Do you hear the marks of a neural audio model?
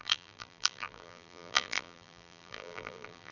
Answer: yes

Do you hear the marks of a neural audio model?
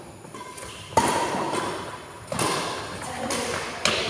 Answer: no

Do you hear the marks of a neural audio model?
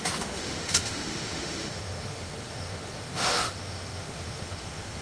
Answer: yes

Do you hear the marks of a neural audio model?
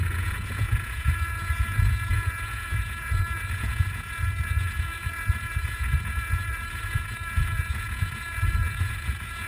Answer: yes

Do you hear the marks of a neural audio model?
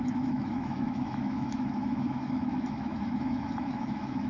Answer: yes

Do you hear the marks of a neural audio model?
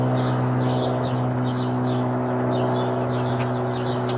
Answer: yes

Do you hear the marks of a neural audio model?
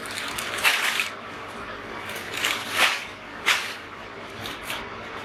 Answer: yes